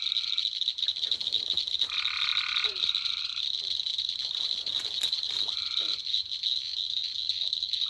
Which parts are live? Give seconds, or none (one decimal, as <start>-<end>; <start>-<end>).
0.0-7.9